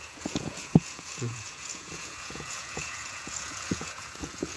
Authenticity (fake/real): fake